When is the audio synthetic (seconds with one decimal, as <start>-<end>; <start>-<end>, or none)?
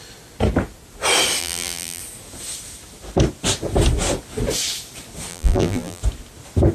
1.4-2.0; 5.3-6.0